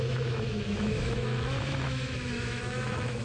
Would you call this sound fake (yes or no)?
yes